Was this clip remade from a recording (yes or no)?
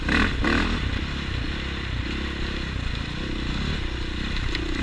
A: no